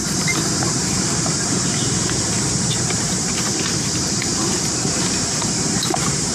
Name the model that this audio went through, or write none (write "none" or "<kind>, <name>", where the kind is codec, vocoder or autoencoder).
vocoder, BigVGAN v2